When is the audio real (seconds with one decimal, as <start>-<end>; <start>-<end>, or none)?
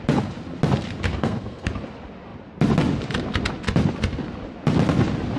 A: 0.0-1.2; 1.7-5.4